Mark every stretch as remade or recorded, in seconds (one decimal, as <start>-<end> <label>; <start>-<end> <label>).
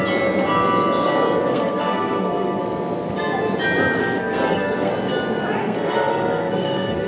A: 0.0-1.5 recorded; 1.5-2.6 remade; 2.6-4.0 recorded; 4.0-4.9 remade; 4.9-5.6 recorded; 5.6-7.1 remade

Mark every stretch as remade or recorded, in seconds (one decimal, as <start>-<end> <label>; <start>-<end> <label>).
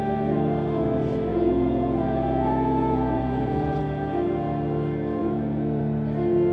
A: 0.0-1.3 recorded; 1.3-3.8 remade; 3.8-5.2 recorded; 5.2-5.8 remade; 5.8-6.5 recorded